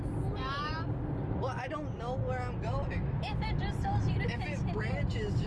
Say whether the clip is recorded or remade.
recorded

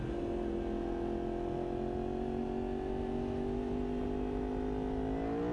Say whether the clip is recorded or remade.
recorded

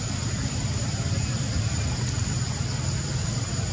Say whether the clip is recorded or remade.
recorded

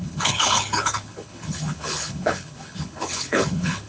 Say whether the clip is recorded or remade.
remade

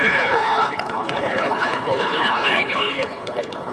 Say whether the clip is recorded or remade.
remade